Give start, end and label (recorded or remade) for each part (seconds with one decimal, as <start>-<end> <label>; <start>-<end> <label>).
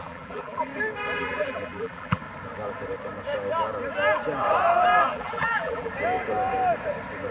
0.0-0.7 remade; 0.7-1.2 recorded; 1.2-2.2 remade; 2.2-5.1 recorded; 5.1-5.9 remade; 5.9-7.3 recorded